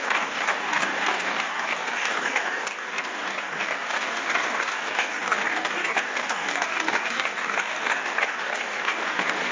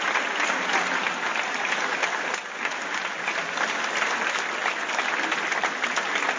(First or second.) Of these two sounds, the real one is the second